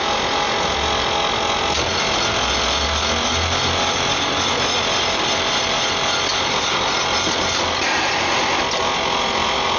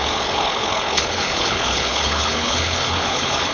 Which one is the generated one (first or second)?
second